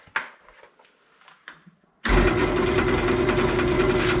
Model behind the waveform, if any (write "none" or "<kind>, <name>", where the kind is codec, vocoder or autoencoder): none